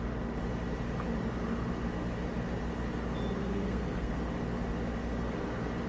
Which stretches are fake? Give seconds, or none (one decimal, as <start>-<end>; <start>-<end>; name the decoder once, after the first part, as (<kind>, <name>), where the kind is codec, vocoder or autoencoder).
3.4-4.1 (codec, SNAC)